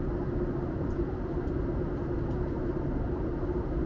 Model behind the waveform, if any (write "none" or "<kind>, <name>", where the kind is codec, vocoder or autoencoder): none